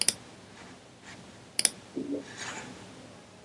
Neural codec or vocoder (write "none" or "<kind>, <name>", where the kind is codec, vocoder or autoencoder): none